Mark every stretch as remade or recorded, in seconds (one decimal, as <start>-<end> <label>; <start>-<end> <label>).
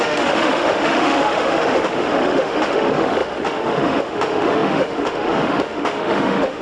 0.0-6.6 remade